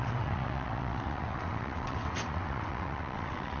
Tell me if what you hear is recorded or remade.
remade